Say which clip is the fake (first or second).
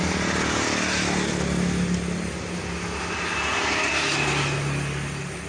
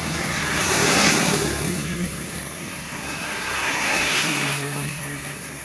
second